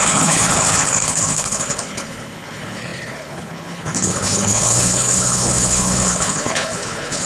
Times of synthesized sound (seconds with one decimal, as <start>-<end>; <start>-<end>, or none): 0.0-7.3